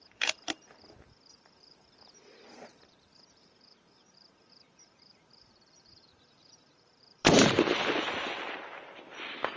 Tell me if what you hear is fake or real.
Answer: fake